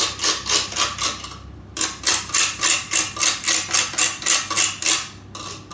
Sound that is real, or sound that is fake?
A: real